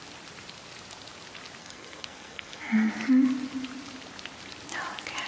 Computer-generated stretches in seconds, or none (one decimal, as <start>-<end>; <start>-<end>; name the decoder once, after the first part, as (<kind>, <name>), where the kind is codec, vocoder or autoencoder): 1.6-2.9 (codec, SNAC)